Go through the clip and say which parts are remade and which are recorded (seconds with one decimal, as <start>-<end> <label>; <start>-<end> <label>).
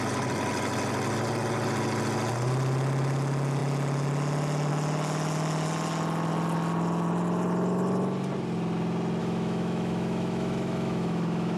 0.0-9.2 recorded; 9.2-11.6 remade